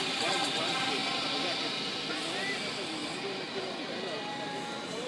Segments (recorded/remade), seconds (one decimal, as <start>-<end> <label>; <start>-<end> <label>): 0.0-5.1 recorded